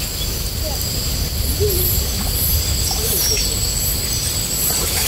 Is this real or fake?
real